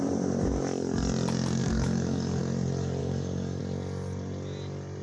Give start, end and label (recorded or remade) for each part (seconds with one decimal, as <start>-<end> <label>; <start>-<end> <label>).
0.0-1.6 recorded; 1.6-2.4 remade; 2.4-3.0 recorded; 3.0-3.6 remade; 3.6-5.0 recorded